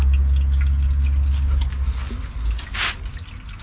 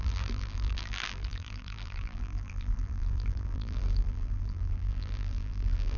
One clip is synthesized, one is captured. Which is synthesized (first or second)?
second